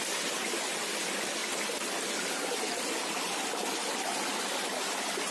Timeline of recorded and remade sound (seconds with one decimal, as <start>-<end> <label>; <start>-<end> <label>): 0.0-5.3 recorded